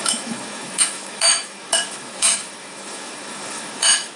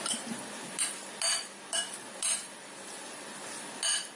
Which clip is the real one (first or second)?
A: second